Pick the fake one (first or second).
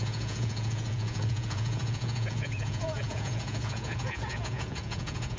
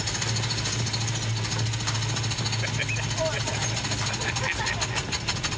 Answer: first